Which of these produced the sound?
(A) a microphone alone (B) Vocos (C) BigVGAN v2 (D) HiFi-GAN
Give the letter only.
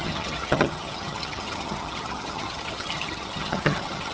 D